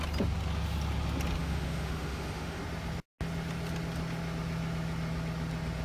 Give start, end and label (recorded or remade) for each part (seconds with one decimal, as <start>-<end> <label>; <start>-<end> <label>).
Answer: 0.0-1.4 recorded; 1.4-2.6 remade; 2.6-5.8 recorded